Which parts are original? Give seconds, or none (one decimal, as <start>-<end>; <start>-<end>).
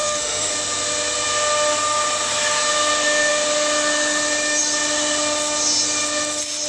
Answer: 0.5-6.7